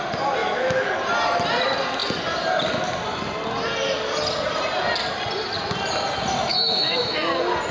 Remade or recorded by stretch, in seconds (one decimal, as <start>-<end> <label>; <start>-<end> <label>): 0.0-0.4 recorded; 0.4-1.0 remade; 1.0-6.5 recorded; 6.5-7.3 remade; 7.3-7.7 recorded